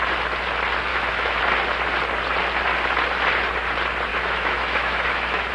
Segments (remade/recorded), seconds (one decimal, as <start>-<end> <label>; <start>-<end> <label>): 0.0-0.9 recorded; 0.9-1.4 remade; 1.4-4.1 recorded; 4.1-5.5 remade